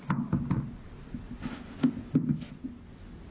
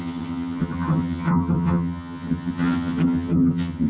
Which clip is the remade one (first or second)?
second